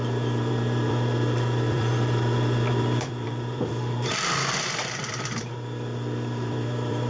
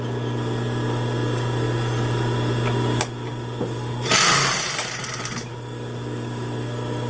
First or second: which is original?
second